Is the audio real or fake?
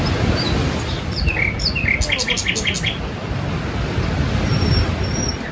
real